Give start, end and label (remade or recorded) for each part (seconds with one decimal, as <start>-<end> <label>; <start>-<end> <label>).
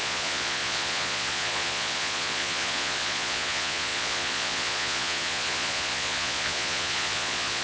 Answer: 0.0-7.6 remade